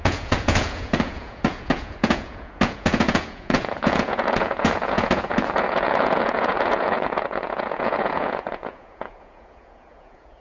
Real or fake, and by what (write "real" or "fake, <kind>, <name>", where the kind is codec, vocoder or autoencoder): fake, vocoder, Vocos